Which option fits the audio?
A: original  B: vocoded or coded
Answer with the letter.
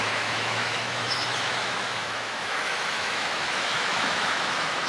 B